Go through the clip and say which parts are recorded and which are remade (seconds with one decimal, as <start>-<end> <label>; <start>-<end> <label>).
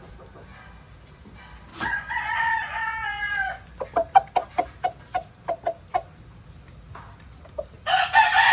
0.0-1.7 recorded; 1.7-3.7 remade; 3.7-8.5 recorded